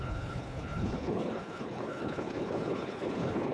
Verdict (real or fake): fake